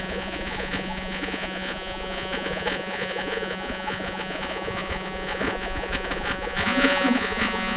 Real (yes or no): no